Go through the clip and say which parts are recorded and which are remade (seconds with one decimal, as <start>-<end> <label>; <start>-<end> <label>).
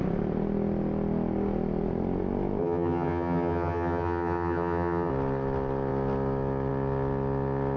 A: 0.0-2.6 recorded; 2.6-5.1 remade; 5.1-7.8 recorded